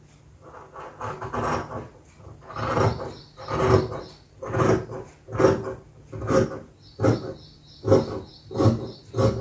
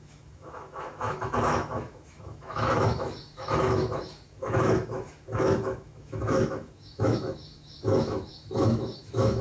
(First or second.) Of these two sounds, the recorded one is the first